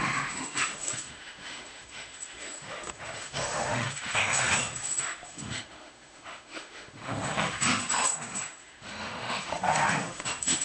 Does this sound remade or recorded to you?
remade